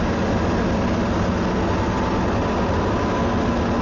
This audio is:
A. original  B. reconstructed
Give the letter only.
A